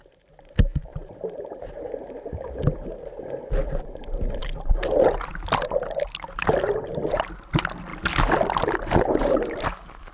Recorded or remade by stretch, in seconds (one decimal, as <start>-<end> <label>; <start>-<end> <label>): 0.0-0.9 recorded; 0.9-2.0 remade; 2.0-10.1 recorded